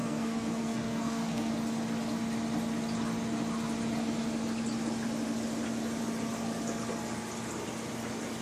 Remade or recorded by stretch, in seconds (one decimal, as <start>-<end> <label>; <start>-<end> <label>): 0.0-1.5 remade; 1.5-8.4 recorded